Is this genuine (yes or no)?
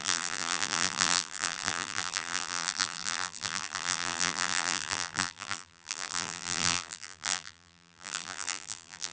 no